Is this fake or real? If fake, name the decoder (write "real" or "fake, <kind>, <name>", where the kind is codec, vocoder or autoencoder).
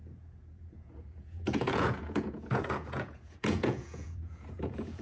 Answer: fake, vocoder, Vocos